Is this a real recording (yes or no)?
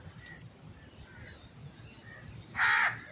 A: yes